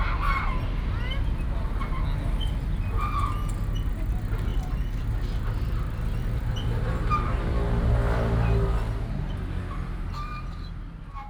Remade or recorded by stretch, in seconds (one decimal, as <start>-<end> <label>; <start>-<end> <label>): 0.0-4.5 recorded; 4.5-7.9 remade; 7.9-11.3 recorded